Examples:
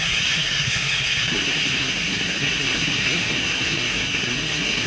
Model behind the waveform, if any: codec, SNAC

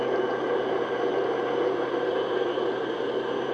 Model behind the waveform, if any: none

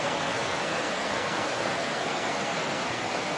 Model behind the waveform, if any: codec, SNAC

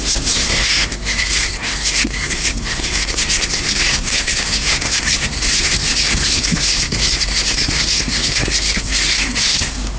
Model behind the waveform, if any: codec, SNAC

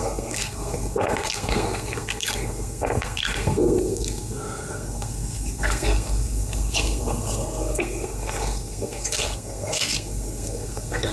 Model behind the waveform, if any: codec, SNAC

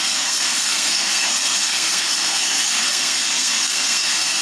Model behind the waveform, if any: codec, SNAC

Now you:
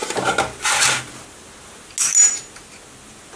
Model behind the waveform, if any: none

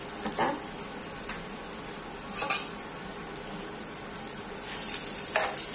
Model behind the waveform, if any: none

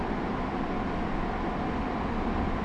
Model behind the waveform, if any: none